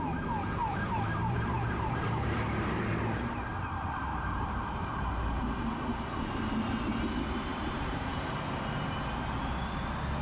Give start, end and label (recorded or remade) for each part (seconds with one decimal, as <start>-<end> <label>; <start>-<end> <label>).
0.0-0.6 recorded; 0.6-5.1 remade; 5.1-7.5 recorded; 7.5-8.6 remade; 8.6-10.2 recorded